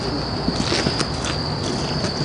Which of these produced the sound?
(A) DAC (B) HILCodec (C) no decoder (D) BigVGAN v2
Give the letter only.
C